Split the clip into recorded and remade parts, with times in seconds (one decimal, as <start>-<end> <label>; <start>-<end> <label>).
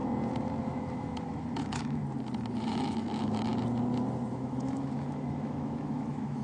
0.0-0.6 recorded; 0.6-2.0 remade; 2.0-2.6 recorded; 2.6-3.5 remade; 3.5-4.3 recorded; 4.3-6.4 remade